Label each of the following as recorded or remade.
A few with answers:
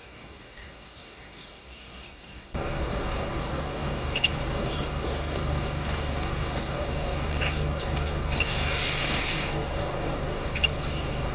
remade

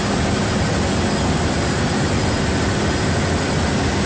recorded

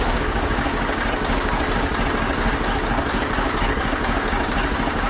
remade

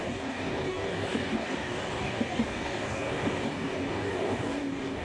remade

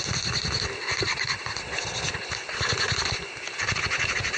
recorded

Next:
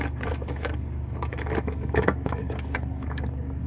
remade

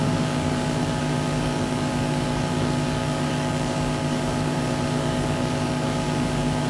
remade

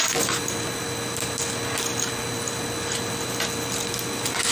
recorded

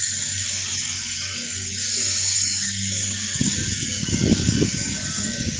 remade